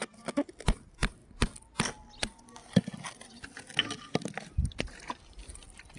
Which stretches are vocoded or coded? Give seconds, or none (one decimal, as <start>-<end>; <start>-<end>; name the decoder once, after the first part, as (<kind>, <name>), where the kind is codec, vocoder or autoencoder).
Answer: none